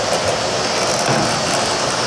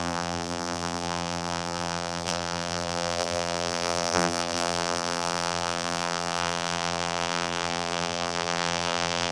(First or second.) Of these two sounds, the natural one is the first